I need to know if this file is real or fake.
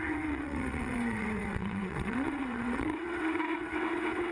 fake